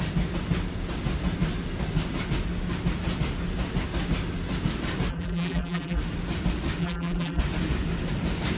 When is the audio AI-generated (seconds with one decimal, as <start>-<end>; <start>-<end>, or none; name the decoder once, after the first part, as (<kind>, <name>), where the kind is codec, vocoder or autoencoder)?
5.1-6.0 (vocoder, BigVGAN v2); 6.8-7.4

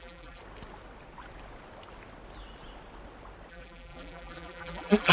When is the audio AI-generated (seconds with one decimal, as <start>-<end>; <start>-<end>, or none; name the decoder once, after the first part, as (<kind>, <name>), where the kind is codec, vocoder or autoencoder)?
0.0-0.4 (vocoder, BigVGAN v2); 3.5-5.1

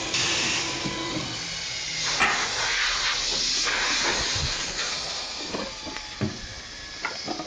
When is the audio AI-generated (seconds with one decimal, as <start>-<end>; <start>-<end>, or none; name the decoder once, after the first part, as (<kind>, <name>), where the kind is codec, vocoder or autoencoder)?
4.4-5.5 (codec, SNAC)

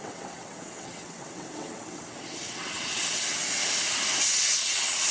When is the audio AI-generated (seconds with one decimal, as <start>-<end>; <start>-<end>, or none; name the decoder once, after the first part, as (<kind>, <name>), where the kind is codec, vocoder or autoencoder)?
0.0-3.4 (vocoder, WaveNeXt); 4.2-5.1

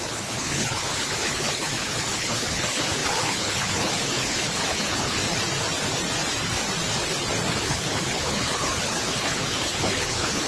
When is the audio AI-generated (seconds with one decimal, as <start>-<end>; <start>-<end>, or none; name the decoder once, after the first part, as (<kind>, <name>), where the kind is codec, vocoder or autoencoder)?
0.0-5.2 (codec, HILCodec); 7.6-10.5

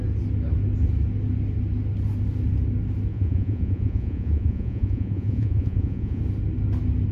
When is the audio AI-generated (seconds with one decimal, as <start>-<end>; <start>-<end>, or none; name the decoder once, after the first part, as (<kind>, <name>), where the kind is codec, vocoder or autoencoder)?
3.1-6.2 (vocoder, Vocos)

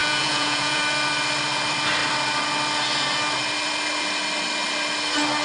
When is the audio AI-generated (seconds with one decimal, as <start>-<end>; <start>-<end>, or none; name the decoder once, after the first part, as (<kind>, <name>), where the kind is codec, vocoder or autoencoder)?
0.0-0.8 (vocoder, Vocos)

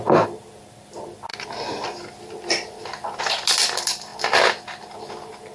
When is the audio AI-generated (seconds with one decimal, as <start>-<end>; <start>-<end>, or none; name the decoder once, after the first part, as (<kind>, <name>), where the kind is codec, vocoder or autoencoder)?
none